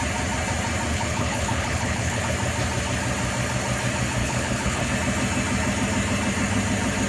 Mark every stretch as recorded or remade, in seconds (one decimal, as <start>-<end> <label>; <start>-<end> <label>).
0.0-0.9 recorded; 0.9-2.2 remade; 2.2-4.2 recorded; 4.2-4.9 remade; 4.9-7.1 recorded